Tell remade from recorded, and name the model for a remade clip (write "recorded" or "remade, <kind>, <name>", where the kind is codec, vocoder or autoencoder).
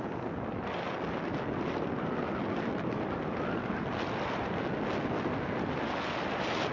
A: recorded